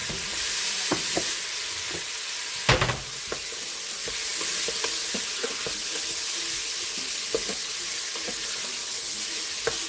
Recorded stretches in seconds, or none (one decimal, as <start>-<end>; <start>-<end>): 2.1-9.9